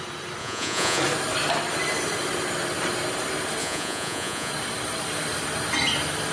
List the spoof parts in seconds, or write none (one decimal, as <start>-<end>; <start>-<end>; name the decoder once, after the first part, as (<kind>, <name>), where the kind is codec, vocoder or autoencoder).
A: 0.4-1.0 (vocoder, Vocos); 3.6-4.5